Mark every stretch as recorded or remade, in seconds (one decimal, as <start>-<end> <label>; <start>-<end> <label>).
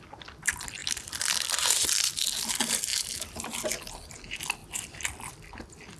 0.0-0.8 recorded; 0.8-2.3 remade; 2.3-6.0 recorded